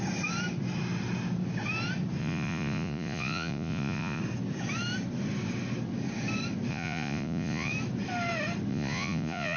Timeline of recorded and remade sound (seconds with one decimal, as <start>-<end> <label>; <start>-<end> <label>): 0.0-2.2 recorded; 2.2-4.2 remade; 4.2-6.7 recorded; 6.7-7.7 remade; 7.7-8.7 recorded; 8.7-9.6 remade